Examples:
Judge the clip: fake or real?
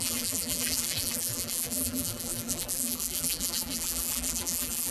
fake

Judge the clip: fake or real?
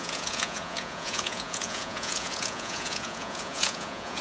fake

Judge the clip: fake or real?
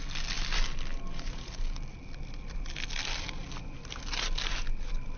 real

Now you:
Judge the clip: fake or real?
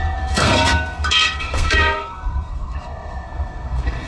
fake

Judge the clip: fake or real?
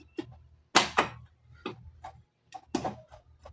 real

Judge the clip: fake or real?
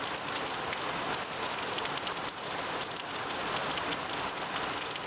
real